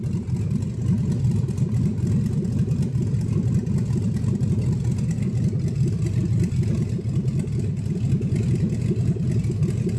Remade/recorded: recorded